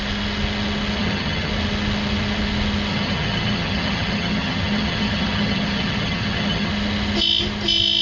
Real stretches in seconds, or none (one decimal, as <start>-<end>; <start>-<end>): 0.0-1.0; 1.5-2.9; 6.7-8.0